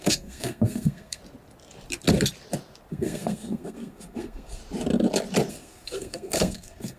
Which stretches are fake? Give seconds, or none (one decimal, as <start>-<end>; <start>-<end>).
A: 0.0-1.2; 2.9-4.6; 5.5-7.0